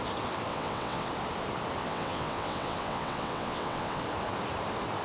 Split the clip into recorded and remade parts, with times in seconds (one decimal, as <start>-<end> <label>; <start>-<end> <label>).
0.0-0.5 recorded; 0.5-1.1 remade; 1.1-1.8 recorded; 1.8-4.0 remade; 4.0-5.0 recorded